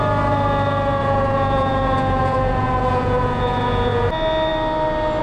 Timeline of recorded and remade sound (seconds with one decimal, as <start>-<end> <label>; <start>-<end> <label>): 0.0-1.0 recorded; 1.0-4.1 remade; 4.1-5.2 recorded